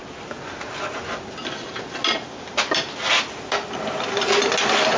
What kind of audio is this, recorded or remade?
recorded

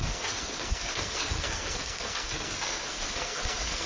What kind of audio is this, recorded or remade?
remade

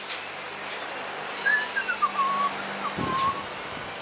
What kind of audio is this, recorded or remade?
recorded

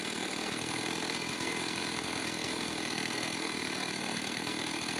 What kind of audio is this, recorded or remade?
remade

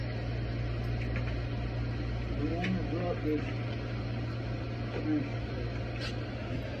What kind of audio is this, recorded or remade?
recorded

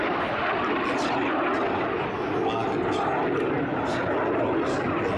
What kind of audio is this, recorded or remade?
recorded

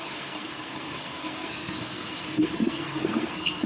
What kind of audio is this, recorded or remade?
remade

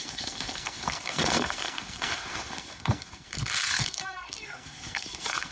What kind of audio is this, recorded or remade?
remade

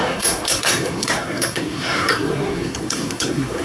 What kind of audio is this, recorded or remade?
remade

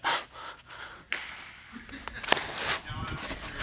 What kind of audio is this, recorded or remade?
recorded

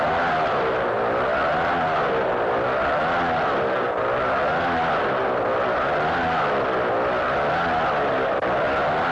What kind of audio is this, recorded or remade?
recorded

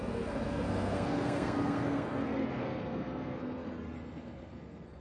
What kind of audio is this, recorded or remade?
remade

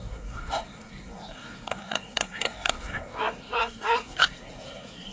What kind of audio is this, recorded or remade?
remade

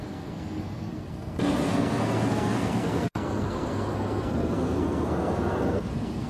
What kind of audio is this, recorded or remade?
remade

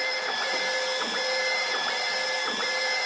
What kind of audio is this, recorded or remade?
recorded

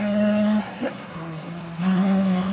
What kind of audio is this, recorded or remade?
remade